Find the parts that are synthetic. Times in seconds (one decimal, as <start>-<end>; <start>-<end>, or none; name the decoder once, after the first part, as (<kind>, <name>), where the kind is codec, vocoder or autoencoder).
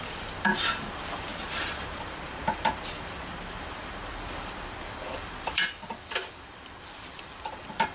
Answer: 0.0-7.9 (vocoder, BigVGAN v2)